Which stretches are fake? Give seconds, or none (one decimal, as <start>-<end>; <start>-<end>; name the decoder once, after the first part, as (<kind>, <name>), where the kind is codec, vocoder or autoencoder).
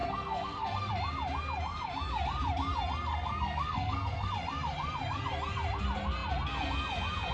0.0-0.9 (codec, SNAC); 3.1-4.3